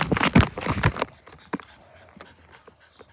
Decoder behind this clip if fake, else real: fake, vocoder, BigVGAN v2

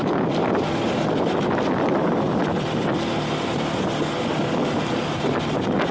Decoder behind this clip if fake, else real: real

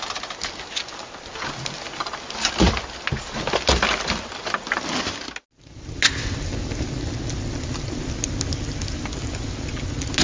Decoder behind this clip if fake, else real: real